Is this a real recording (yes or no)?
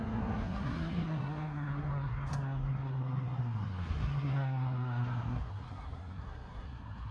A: no